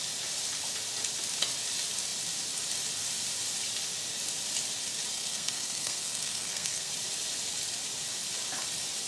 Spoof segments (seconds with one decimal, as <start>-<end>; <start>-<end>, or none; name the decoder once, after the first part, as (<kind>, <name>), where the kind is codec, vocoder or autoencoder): 5.1-6.9 (codec, SNAC)